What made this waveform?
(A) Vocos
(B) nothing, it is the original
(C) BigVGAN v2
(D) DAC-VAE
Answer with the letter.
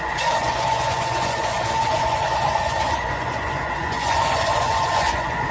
A